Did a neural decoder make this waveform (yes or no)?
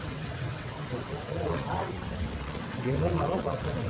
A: yes